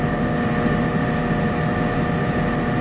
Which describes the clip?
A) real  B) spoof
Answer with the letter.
A